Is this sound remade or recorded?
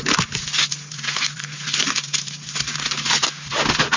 recorded